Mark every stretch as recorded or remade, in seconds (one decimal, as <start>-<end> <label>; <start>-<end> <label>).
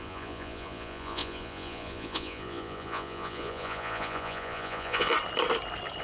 0.0-5.1 remade; 5.1-6.0 recorded